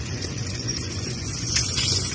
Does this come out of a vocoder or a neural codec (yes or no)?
yes